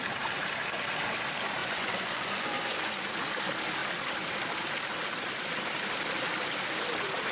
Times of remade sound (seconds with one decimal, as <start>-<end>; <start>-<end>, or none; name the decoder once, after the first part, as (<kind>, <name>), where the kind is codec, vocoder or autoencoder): 1.6-2.9 (vocoder, Vocos)